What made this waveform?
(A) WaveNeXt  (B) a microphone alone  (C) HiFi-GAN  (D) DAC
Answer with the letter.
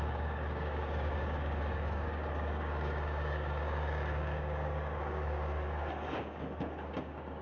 D